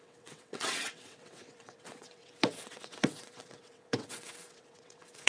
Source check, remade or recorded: remade